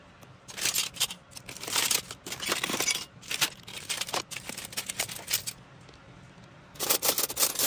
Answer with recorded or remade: recorded